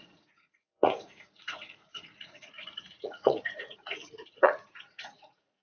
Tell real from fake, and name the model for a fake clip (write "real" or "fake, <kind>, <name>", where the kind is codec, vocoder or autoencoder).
fake, vocoder, Vocos